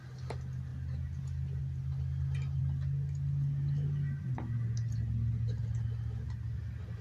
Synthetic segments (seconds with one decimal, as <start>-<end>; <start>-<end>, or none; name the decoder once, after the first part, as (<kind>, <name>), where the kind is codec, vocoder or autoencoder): none